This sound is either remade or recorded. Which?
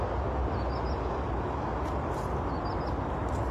recorded